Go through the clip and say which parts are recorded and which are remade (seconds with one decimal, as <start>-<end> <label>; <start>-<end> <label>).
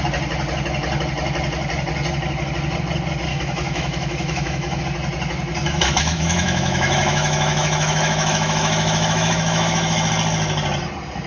0.0-3.3 recorded; 3.3-4.8 remade; 4.8-5.6 recorded; 5.6-10.1 remade; 10.1-11.3 recorded